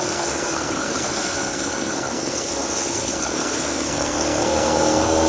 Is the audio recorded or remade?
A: remade